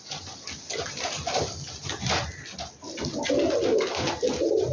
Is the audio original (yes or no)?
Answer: yes